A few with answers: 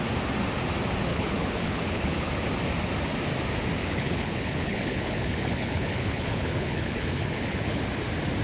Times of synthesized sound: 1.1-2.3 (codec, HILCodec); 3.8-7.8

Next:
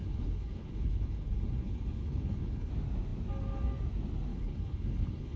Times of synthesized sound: 0.0-2.7 (codec, HILCodec); 4.3-5.4